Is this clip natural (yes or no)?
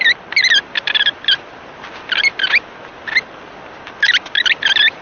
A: yes